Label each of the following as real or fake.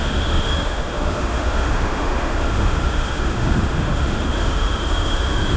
fake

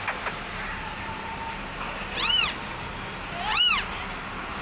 real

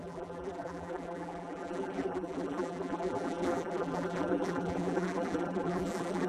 fake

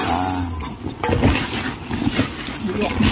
real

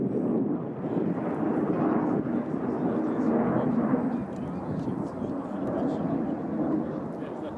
real